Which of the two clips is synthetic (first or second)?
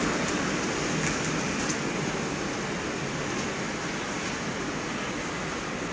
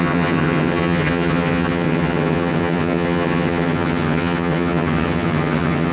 second